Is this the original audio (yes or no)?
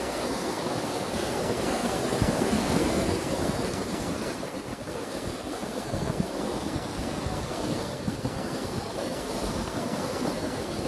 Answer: no